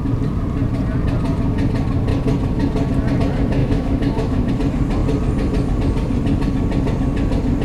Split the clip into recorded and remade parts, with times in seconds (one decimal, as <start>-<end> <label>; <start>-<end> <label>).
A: 0.0-3.6 recorded; 3.6-4.5 remade; 4.5-7.6 recorded